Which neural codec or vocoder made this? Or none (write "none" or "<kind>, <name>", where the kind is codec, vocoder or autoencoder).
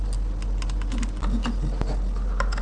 none